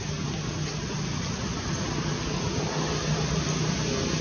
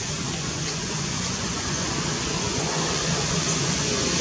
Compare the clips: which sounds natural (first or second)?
first